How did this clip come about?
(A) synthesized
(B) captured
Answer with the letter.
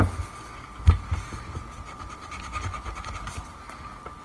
B